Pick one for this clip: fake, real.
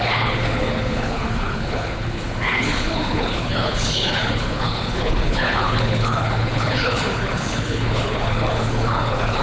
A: fake